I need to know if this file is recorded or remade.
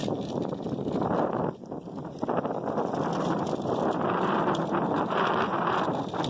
recorded